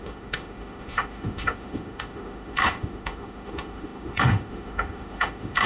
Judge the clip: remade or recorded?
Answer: remade